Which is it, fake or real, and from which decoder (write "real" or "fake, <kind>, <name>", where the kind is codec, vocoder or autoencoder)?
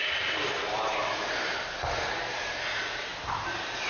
real